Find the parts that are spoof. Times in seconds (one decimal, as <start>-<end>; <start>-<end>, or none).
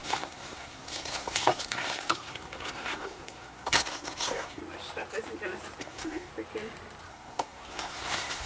0.0-4.6; 5.8-6.3; 7.1-8.5